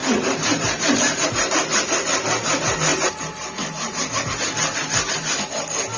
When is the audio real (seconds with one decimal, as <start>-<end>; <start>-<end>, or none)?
1.5-2.9; 4.2-5.1; 5.6-6.0